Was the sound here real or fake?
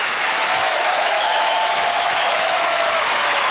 fake